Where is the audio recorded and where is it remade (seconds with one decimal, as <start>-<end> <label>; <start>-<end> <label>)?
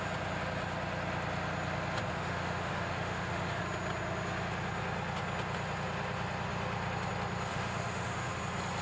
0.0-2.1 recorded; 2.1-3.6 remade; 3.6-7.5 recorded; 7.5-8.4 remade; 8.4-8.8 recorded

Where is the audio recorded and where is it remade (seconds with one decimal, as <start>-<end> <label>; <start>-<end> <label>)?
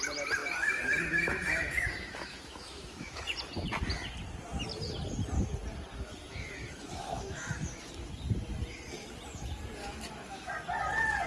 0.0-0.4 recorded; 0.4-3.2 remade; 3.2-6.2 recorded; 6.2-7.9 remade; 7.9-9.8 recorded; 9.8-10.5 remade; 10.5-11.3 recorded